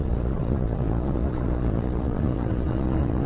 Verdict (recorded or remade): remade